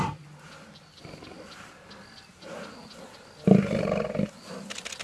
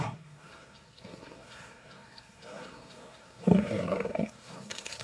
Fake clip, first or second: second